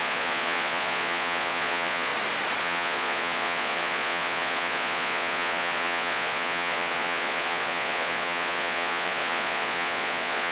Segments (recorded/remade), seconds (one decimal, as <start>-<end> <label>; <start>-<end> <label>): 0.0-2.1 remade; 2.1-2.6 recorded; 2.6-10.5 remade